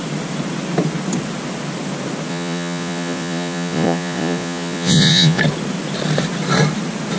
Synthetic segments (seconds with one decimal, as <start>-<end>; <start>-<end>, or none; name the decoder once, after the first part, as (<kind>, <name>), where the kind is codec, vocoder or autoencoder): 2.3-5.4 (vocoder, Vocos)